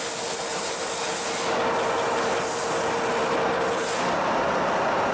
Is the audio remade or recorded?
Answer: recorded